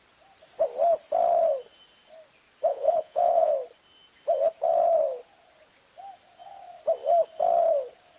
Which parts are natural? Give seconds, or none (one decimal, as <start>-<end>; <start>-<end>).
0.0-2.7; 3.5-8.2